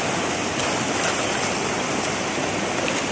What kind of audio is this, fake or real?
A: real